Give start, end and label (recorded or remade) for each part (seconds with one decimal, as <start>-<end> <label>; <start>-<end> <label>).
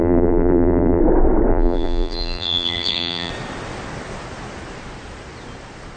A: 0.0-1.0 remade; 1.0-1.5 recorded; 1.5-3.3 remade; 3.3-6.0 recorded